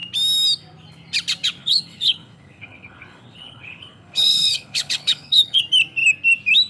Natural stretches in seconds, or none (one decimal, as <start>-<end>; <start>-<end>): 0.0-1.6; 5.6-6.7